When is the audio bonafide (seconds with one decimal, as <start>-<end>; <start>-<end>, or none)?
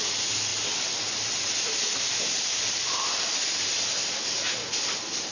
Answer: 0.0-5.3